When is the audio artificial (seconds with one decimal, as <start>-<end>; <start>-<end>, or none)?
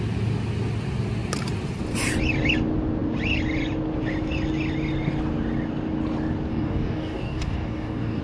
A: 6.5-8.2